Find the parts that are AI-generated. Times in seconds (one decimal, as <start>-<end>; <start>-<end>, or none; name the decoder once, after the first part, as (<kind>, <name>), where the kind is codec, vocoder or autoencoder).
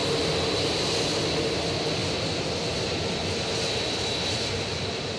none